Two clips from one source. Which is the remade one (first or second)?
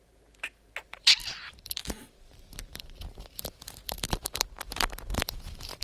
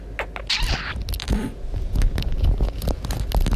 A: first